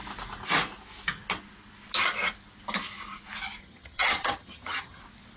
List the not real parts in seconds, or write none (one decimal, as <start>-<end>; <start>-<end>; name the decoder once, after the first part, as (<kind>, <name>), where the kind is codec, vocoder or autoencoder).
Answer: 3.6-5.0 (vocoder, HiFi-GAN)